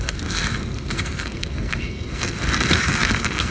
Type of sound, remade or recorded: remade